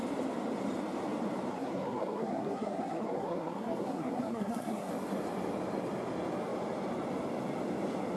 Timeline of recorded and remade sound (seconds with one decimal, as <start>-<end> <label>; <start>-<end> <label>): 0.0-1.5 recorded; 1.5-4.9 remade; 4.9-8.2 recorded